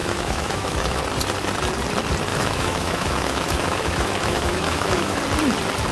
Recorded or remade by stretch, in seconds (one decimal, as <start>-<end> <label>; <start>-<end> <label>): 0.0-1.0 remade; 1.0-2.3 recorded; 2.3-5.2 remade; 5.2-5.9 recorded